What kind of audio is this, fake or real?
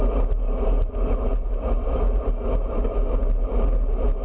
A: real